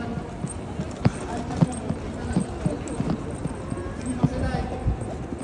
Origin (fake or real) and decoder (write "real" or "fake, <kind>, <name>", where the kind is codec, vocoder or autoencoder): real